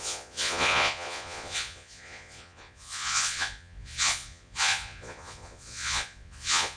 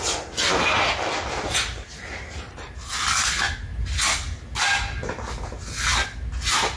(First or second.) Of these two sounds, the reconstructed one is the first